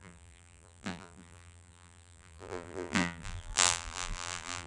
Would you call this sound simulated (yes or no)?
yes